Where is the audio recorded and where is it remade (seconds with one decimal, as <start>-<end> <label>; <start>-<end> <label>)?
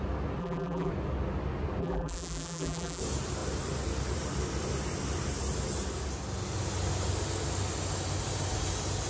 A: 0.0-0.4 recorded; 0.4-0.9 remade; 0.9-1.8 recorded; 1.8-3.0 remade; 3.0-9.1 recorded